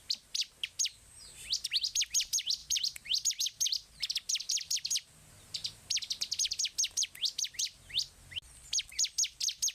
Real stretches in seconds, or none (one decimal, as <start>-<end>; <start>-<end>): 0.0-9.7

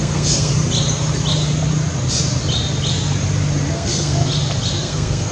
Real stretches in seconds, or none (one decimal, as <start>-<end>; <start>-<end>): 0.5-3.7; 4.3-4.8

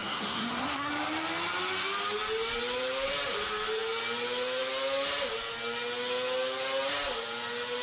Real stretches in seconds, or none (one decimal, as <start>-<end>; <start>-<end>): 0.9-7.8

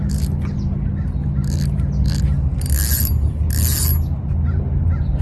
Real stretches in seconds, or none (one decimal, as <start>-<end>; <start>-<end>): 0.0-5.2

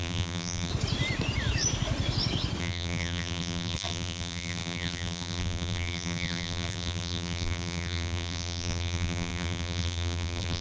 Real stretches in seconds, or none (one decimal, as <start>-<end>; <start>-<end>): 0.7-2.6